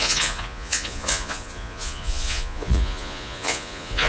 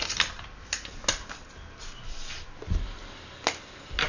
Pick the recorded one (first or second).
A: second